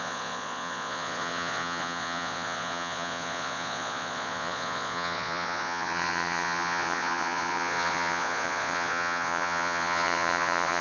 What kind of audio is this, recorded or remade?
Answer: remade